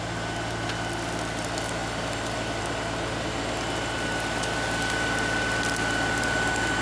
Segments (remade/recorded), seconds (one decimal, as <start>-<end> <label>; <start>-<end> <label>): 0.0-1.8 recorded; 1.8-2.6 remade; 2.6-6.8 recorded

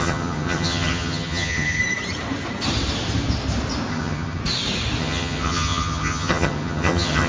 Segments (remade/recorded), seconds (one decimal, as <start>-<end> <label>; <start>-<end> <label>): 0.0-1.8 remade; 1.8-3.9 recorded; 3.9-4.4 remade; 4.4-5.0 recorded; 5.0-7.3 remade

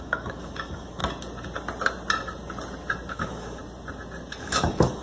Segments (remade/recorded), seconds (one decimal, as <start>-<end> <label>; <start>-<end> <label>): 0.0-1.0 remade; 1.0-3.1 recorded; 3.1-3.6 remade; 3.6-4.4 recorded; 4.4-5.0 remade

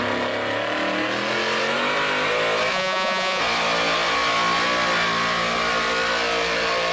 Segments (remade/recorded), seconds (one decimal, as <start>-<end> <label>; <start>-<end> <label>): 0.0-2.7 recorded; 2.7-3.4 remade; 3.4-6.9 recorded

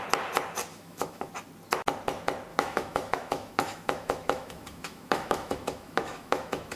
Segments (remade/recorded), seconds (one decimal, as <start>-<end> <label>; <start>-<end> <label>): 0.0-0.7 recorded; 0.7-1.3 remade; 1.3-2.5 recorded; 2.5-6.8 remade